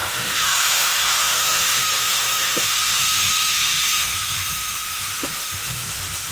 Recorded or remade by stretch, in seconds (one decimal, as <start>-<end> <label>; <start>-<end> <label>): 0.0-6.3 remade